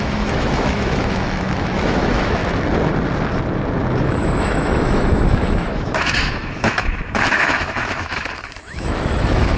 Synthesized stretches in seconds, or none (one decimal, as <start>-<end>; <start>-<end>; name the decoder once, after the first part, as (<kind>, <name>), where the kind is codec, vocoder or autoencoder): 0.0-2.4 (autoencoder, DAC-VAE); 4.0-9.6